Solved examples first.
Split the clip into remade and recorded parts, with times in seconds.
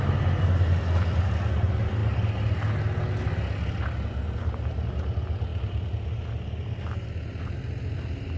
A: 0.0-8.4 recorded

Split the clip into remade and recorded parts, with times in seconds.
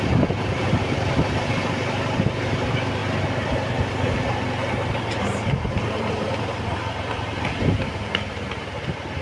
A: 0.0-3.0 remade; 3.0-4.7 recorded; 4.7-9.2 remade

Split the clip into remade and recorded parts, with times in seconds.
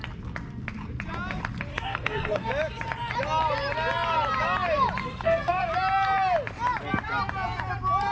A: 0.0-1.7 recorded; 1.7-2.5 remade; 2.5-5.0 recorded; 5.0-5.7 remade; 5.7-8.1 recorded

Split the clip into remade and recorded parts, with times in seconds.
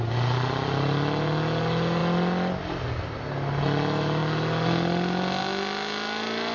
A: 0.0-6.5 recorded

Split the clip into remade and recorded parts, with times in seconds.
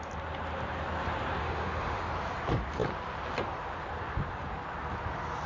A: 0.0-1.4 recorded; 1.4-2.0 remade; 2.0-5.5 recorded